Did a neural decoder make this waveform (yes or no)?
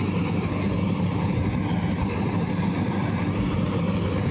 no